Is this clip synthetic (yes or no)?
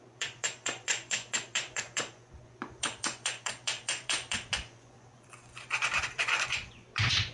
yes